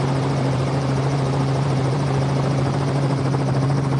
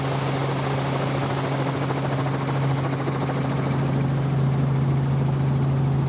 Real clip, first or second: second